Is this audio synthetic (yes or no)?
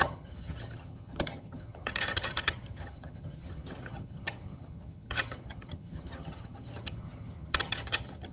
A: yes